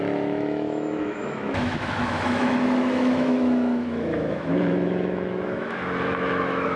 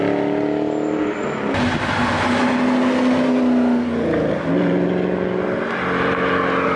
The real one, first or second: second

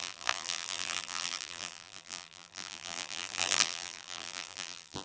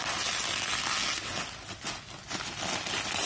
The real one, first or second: second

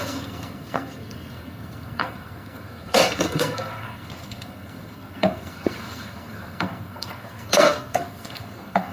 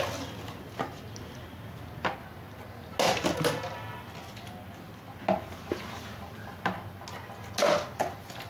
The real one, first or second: second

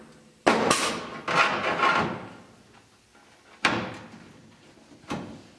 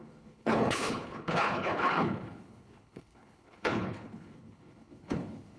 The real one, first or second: first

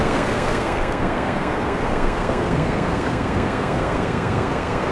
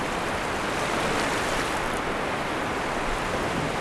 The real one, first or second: second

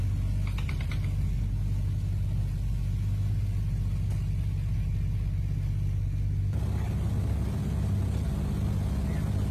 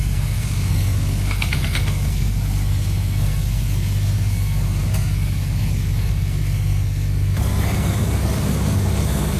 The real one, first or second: first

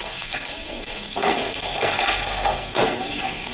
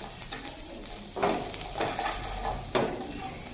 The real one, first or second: second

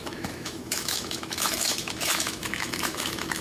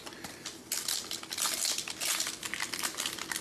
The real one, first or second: second